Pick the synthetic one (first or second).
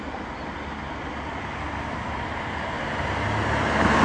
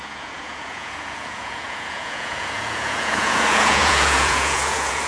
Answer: second